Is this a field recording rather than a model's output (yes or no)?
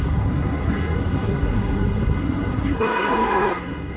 no